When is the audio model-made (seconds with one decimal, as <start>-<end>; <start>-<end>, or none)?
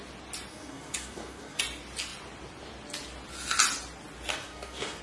0.5-1.6; 4.3-5.0